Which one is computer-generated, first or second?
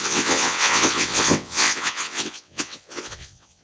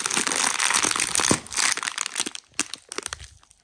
first